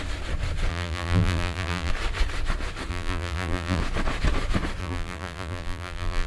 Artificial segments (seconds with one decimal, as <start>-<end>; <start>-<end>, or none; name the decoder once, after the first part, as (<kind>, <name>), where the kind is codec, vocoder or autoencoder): 0.7-1.9 (vocoder, BigVGAN v2); 2.9-3.8; 4.8-6.3

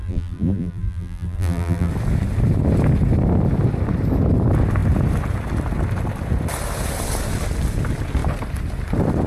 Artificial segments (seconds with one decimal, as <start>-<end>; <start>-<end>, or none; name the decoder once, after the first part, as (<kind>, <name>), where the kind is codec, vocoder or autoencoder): 0.0-1.9 (vocoder, BigVGAN v2)

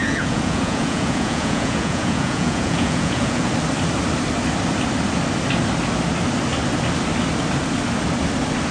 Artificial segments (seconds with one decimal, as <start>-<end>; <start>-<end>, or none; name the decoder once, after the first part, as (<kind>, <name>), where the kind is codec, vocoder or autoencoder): 0.0-3.5 (vocoder, Vocos)

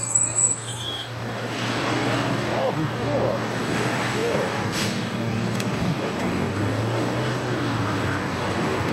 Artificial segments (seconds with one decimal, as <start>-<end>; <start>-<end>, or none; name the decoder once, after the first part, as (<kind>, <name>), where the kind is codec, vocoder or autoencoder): 0.0-8.9 (codec, DAC)

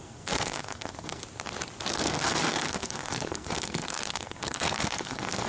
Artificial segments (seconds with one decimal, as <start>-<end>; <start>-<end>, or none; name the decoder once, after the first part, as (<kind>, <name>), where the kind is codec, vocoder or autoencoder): 0.0-1.2 (codec, SNAC); 1.9-5.5

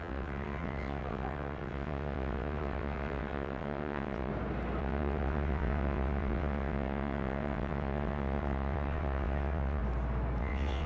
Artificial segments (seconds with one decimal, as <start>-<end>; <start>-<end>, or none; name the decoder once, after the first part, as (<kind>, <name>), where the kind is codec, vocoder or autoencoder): 0.0-4.3 (vocoder, WaveNeXt); 4.8-9.8; 10.4-10.9

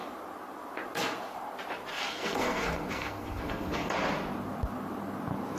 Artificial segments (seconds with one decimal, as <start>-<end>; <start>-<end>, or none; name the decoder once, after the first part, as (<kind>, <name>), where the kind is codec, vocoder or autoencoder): 1.9-3.9 (codec, SNAC)